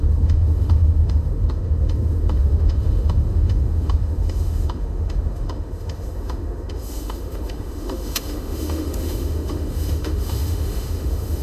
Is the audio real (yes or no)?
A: no